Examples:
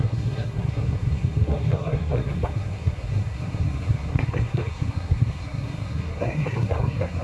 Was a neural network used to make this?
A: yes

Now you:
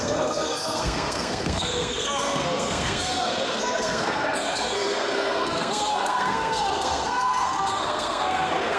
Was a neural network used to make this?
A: yes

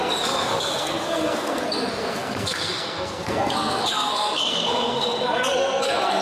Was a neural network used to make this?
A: yes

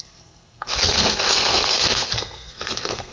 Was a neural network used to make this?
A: yes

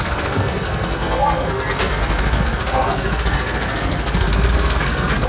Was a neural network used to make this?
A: yes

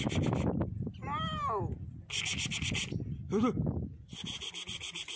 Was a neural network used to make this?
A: no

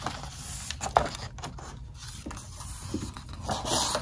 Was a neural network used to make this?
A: no